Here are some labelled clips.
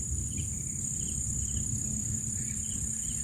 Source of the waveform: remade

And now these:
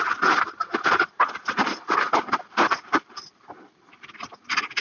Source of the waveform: remade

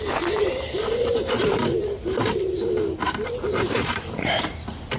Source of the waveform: remade